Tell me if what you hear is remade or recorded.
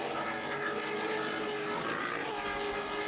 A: recorded